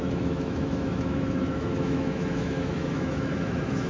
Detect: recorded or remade remade